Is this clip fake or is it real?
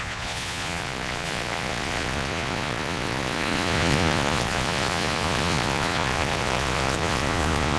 fake